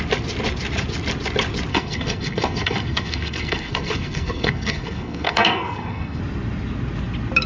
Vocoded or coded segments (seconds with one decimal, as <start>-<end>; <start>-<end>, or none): 1.7-6.2